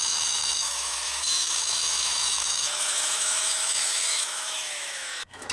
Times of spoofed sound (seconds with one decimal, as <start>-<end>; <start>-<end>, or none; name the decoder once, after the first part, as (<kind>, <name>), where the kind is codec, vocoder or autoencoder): 0.0-5.5 (autoencoder, DAC-VAE)

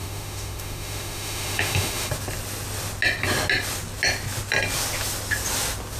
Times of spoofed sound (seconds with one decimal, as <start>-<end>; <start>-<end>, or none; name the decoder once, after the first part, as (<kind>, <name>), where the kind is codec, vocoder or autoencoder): 0.0-2.1 (autoencoder, DAC-VAE)

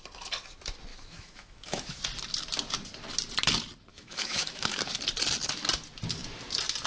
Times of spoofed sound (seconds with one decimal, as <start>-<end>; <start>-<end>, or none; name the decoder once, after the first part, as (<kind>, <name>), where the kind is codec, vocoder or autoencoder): 0.9-2.0 (autoencoder, DAC-VAE); 3.9-4.8

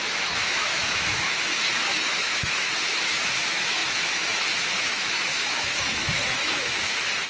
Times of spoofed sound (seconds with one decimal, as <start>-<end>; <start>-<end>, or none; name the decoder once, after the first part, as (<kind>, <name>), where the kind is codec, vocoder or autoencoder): 0.0-7.3 (autoencoder, DAC-VAE)